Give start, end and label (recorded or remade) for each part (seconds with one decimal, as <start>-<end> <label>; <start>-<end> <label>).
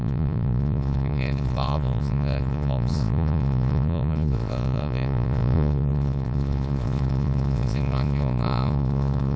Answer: 0.0-9.4 remade